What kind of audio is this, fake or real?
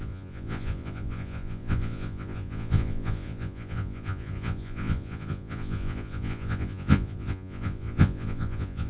fake